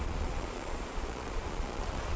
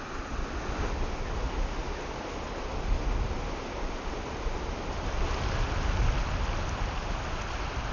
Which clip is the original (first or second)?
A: second